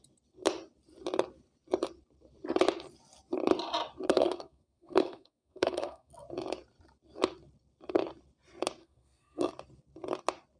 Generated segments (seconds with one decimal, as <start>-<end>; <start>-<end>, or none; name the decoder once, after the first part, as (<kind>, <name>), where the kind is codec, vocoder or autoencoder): 4.1-6.1 (codec, SNAC); 8.8-9.5